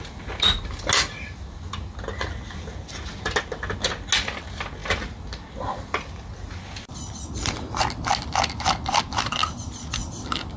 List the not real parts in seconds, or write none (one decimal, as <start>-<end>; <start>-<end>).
none